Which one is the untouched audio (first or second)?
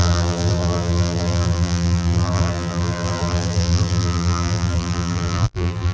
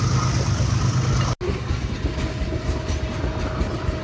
second